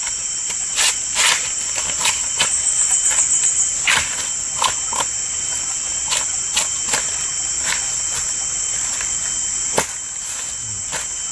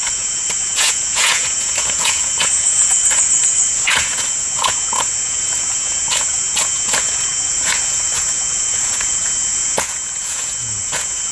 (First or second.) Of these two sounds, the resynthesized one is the second